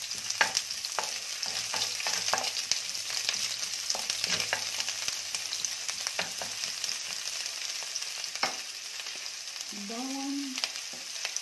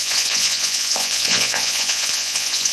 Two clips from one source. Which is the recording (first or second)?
first